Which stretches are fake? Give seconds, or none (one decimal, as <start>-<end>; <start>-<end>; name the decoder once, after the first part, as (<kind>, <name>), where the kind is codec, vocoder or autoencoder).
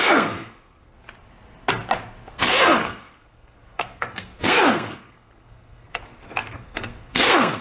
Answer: 0.0-1.0 (codec, SNAC); 2.3-7.6